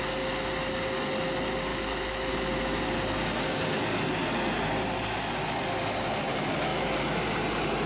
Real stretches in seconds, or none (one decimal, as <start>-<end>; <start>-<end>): 0.0-1.7; 2.3-6.7; 7.2-7.9

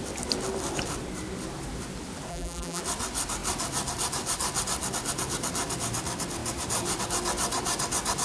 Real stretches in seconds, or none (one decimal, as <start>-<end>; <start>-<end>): 0.0-2.3; 2.8-8.2

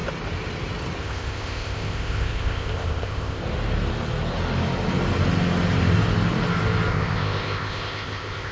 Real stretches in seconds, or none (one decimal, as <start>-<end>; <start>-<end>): 0.0-1.0; 3.4-6.9

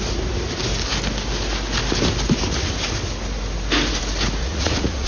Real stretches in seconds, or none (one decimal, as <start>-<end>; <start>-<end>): 0.0-4.4

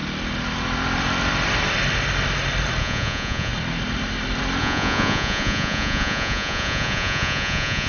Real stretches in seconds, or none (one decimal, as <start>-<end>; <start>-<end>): 0.0-2.8; 3.5-4.6

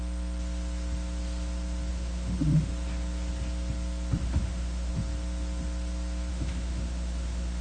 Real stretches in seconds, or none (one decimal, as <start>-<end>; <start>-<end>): 0.0-1.9; 2.7-4.2; 4.9-6.3